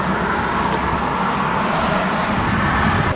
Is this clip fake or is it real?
real